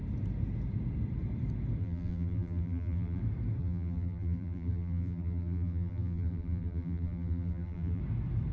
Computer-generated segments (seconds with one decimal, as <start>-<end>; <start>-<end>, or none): 1.8-3.2; 3.6-8.0

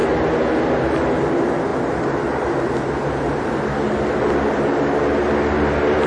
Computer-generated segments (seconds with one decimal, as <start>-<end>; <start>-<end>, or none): none

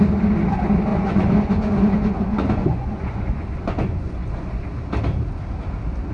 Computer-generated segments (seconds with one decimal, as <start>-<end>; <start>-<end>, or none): 0.9-4.6

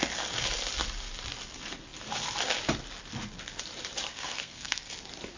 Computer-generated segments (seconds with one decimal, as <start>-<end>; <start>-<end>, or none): 4.1-4.9

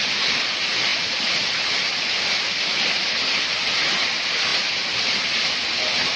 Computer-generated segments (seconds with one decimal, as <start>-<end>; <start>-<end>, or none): none

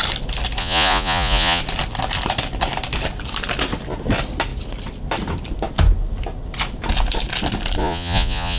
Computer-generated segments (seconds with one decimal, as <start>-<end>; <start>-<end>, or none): 0.6-1.6; 7.8-8.6